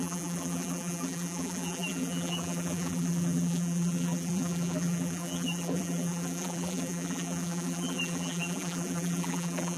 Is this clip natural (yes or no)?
no